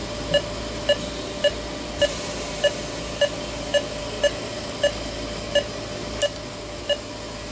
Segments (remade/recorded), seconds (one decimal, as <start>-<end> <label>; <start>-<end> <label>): 0.0-7.5 recorded